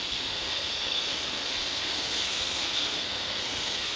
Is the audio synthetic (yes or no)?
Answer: yes